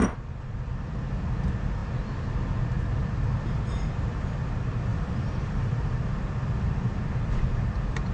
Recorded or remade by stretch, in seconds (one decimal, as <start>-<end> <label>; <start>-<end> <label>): 0.0-4.9 recorded; 4.9-5.8 remade; 5.8-8.1 recorded